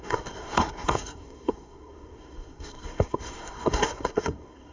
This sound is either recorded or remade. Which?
remade